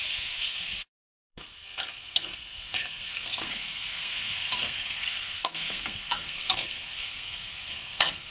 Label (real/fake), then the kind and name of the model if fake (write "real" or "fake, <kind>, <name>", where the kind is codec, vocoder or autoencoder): fake, codec, SNAC